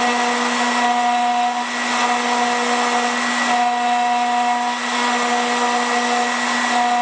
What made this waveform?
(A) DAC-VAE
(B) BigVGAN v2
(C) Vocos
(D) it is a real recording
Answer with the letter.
D